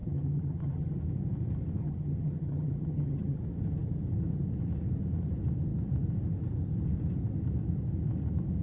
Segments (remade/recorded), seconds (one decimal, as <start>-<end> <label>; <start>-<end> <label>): 0.0-1.0 remade; 1.0-1.8 recorded; 1.8-3.4 remade; 3.4-8.6 recorded